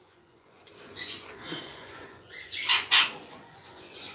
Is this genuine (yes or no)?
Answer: no